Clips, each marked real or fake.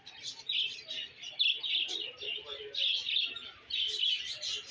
real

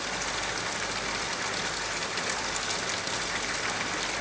real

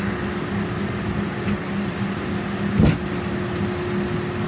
real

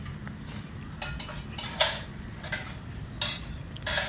real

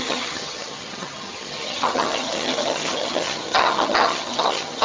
fake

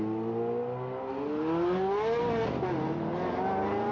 real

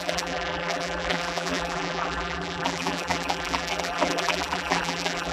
fake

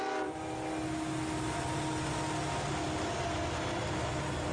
real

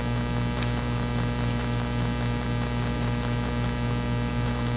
real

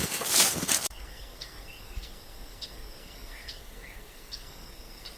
fake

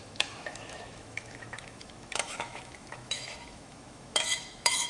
fake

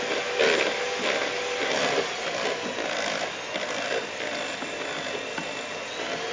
real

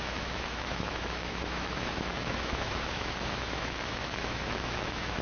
fake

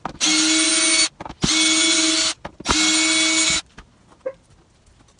real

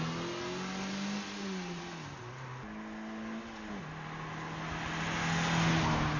real